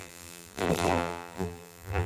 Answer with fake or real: fake